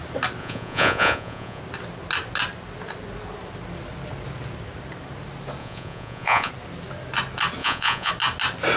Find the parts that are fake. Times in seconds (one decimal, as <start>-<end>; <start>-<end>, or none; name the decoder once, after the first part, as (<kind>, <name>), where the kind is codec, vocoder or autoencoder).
0.4-1.6 (vocoder, Vocos); 5.6-6.5; 7.6-8.1